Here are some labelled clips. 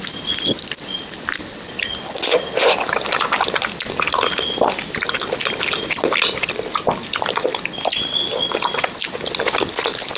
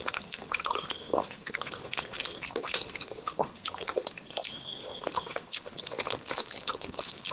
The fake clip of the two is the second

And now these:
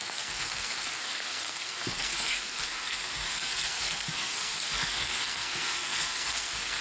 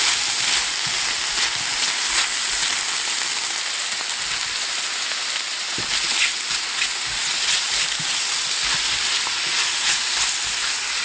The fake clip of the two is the first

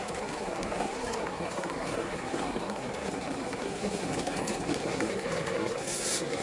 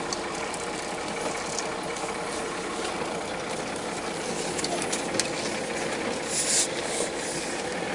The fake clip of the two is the first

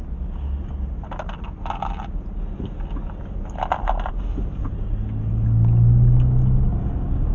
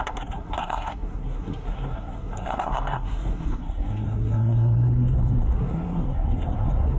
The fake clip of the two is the second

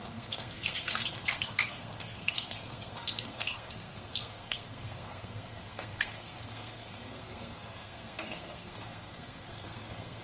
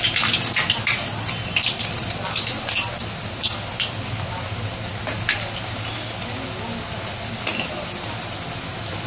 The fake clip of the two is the first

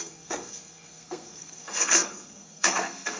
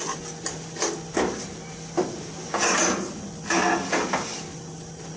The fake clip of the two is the first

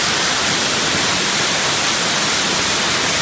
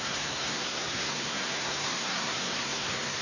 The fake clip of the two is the second